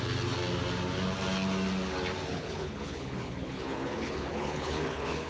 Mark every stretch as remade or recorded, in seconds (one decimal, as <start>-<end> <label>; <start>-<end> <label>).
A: 0.0-2.3 recorded; 2.3-5.3 remade